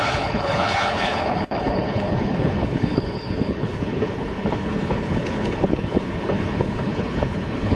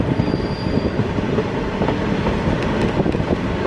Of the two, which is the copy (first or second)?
first